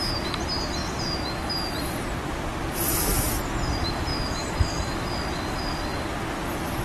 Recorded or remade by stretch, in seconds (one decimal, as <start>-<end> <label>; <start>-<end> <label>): 0.0-6.8 recorded